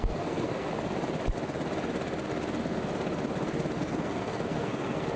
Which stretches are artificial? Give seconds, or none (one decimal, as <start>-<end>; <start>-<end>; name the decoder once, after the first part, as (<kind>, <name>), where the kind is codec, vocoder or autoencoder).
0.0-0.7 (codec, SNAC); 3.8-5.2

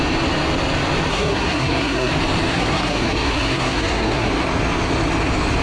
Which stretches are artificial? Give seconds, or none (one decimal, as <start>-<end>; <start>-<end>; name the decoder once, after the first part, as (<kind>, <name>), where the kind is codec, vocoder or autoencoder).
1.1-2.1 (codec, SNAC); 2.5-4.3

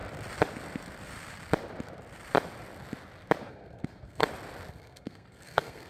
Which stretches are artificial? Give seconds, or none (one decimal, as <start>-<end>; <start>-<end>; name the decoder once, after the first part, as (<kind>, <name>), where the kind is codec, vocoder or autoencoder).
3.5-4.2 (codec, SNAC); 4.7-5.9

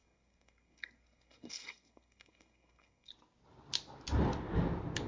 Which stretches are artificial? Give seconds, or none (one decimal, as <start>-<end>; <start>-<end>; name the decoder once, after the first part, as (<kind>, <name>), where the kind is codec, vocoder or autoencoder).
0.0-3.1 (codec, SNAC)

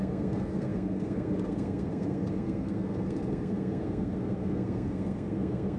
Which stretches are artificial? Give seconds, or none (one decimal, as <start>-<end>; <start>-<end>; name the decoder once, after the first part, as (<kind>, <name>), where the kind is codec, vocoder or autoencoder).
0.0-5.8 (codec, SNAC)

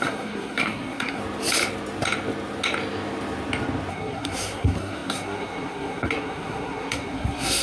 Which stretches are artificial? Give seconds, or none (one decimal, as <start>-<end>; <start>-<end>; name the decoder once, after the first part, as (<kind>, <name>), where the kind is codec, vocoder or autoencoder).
0.0-1.2 (codec, SNAC); 3.9-7.6